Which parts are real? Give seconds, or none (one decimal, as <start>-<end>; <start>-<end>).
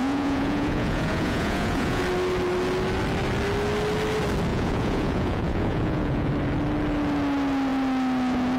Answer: 2.0-4.5; 6.3-8.6